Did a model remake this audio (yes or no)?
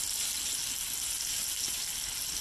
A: no